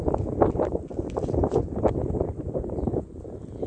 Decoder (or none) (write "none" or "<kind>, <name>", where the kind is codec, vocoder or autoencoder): none